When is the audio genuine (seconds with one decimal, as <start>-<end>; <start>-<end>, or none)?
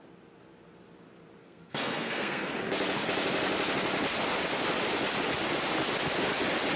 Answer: 0.0-1.4; 2.5-6.8